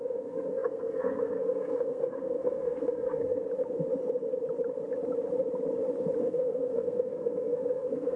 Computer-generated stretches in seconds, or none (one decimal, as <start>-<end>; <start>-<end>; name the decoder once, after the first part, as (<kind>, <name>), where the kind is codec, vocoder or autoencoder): 0.0-3.2 (codec, SNAC); 6.2-8.2